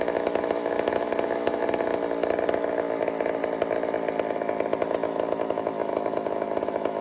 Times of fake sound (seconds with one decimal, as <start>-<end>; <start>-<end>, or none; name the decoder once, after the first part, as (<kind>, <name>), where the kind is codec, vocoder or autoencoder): 0.0-1.6 (autoencoder, DAC-VAE); 2.7-3.4; 4.8-7.0